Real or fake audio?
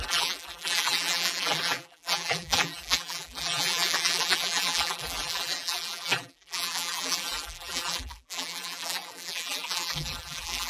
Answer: fake